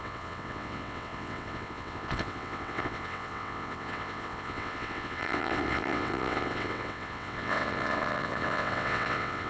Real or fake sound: fake